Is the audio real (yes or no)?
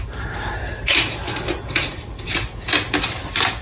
yes